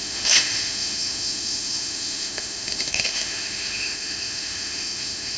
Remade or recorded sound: remade